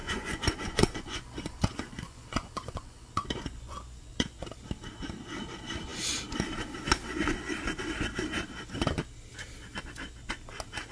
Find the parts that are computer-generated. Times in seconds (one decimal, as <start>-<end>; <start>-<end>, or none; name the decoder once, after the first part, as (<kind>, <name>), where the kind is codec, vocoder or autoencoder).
0.0-4.5 (vocoder, Vocos)